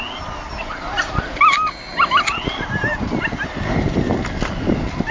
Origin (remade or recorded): recorded